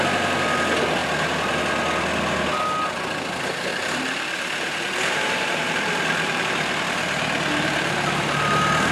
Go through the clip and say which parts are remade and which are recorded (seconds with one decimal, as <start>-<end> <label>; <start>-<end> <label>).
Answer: 0.0-3.7 recorded; 3.7-8.9 remade